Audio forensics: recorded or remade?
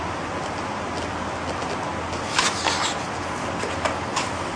recorded